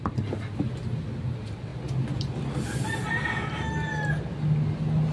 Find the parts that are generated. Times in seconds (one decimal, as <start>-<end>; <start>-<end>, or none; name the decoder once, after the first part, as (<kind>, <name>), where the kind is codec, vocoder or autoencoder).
none